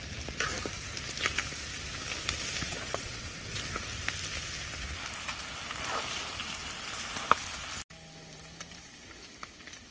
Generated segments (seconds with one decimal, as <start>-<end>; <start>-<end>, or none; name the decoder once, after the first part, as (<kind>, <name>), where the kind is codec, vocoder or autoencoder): 2.6-3.4 (vocoder, Vocos)